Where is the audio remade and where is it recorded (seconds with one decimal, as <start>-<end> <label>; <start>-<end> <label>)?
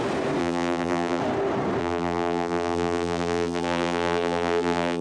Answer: 0.0-0.4 recorded; 0.4-1.2 remade; 1.2-1.8 recorded; 1.8-5.0 remade